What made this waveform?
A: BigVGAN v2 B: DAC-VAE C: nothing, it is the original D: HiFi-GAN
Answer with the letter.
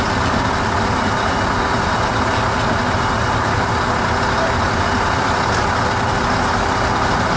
C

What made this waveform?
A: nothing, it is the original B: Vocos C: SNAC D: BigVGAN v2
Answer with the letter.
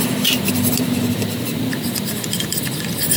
A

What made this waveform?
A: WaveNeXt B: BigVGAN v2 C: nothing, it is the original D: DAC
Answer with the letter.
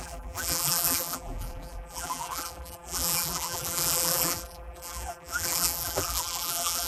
B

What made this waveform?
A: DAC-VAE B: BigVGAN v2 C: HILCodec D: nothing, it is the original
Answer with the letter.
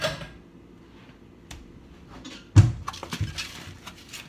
D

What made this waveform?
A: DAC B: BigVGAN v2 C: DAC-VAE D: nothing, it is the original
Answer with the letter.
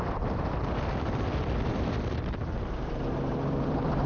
B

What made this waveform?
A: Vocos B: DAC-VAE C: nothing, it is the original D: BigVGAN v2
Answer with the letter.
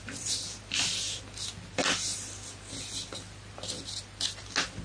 C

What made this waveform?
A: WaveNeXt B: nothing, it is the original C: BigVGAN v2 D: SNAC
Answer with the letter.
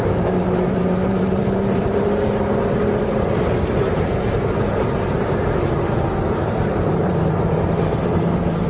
C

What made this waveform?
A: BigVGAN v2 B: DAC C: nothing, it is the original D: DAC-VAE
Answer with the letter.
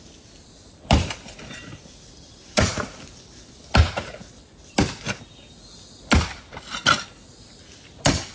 C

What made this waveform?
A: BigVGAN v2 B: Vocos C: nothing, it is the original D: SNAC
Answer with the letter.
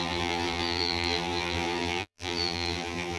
A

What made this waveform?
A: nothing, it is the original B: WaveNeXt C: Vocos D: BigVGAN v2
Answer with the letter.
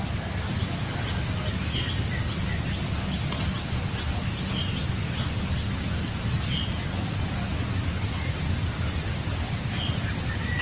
A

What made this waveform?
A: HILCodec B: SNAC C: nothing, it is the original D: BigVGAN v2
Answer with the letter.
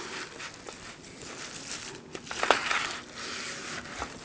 C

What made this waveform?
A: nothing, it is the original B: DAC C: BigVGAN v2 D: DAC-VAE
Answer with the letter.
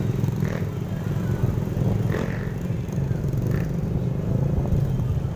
A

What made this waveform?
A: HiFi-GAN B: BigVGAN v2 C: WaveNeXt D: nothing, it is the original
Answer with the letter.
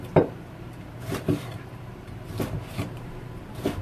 B